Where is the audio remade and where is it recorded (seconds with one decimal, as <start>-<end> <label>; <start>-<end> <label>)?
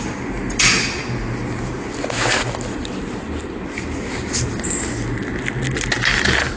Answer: 0.0-6.6 recorded